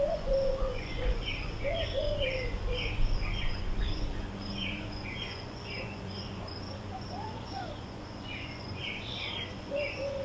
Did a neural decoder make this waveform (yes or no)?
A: yes